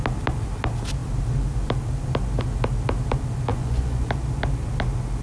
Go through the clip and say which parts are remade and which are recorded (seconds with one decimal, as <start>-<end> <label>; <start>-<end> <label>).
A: 0.0-3.5 recorded; 3.5-4.1 remade; 4.1-5.2 recorded